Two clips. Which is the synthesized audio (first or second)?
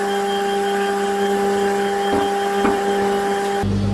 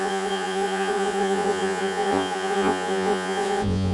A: second